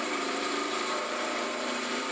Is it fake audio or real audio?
fake